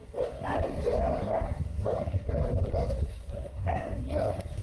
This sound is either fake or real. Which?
fake